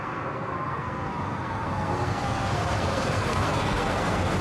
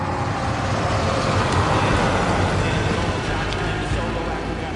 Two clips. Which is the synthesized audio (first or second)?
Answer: first